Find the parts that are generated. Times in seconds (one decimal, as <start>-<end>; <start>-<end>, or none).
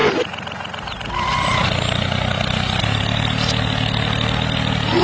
none